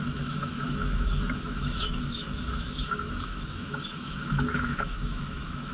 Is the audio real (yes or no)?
no